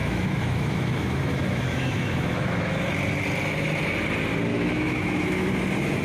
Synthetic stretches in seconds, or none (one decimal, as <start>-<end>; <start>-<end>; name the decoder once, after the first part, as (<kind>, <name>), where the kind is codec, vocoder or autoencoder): 0.0-2.7 (autoencoder, DAC-VAE); 4.5-5.5